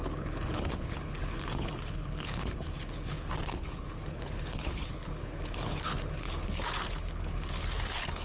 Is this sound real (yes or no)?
no